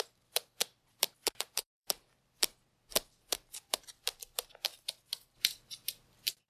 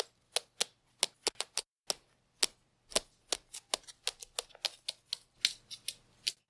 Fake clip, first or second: first